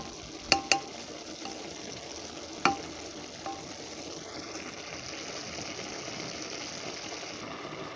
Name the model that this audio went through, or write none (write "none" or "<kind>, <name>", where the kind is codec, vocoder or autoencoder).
none